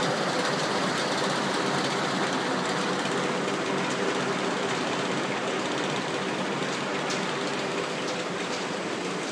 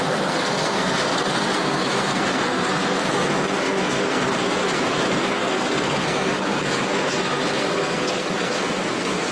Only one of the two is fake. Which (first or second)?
second